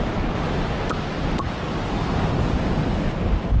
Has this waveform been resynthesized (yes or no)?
no